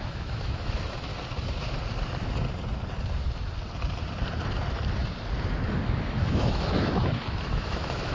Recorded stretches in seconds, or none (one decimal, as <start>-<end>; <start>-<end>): 1.1-5.7